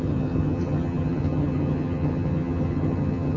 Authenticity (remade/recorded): remade